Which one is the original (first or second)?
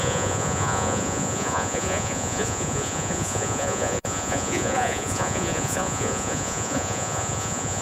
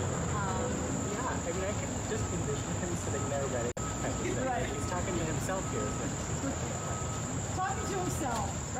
second